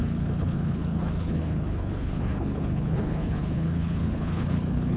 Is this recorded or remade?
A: remade